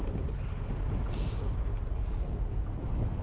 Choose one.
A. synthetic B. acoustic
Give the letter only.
A